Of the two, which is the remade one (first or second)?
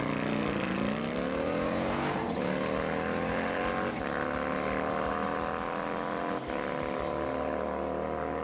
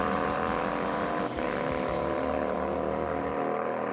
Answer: second